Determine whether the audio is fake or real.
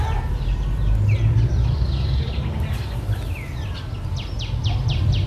real